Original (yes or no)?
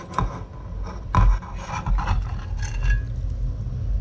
yes